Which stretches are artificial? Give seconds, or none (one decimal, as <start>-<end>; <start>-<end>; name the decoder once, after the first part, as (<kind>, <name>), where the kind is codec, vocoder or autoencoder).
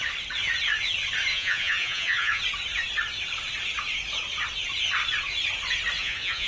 1.3-2.4 (vocoder, Vocos); 6.0-6.5